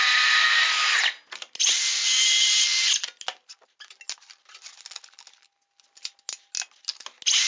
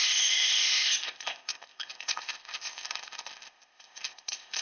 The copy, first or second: second